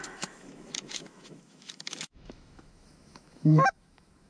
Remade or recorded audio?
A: remade